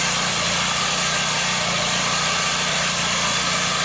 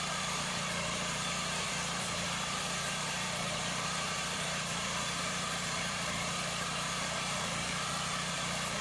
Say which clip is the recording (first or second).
first